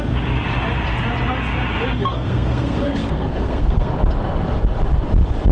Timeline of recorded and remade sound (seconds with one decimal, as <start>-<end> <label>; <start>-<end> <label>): 0.0-2.1 recorded; 2.1-3.9 remade; 3.9-5.5 recorded